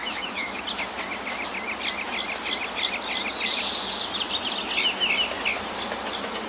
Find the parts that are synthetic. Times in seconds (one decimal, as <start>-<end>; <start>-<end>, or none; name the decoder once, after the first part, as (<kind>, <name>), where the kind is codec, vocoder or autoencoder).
0.0-0.6 (autoencoder, DAC-VAE)